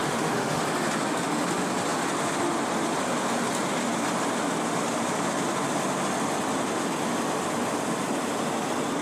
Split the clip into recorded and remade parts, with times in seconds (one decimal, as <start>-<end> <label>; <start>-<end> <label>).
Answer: 0.0-0.6 remade; 0.6-9.0 recorded